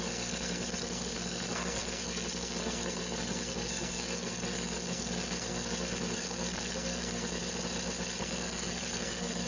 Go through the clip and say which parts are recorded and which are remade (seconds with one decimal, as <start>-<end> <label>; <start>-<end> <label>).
0.0-7.4 remade; 7.4-8.2 recorded; 8.2-9.5 remade